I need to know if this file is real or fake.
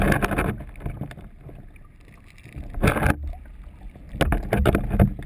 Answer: real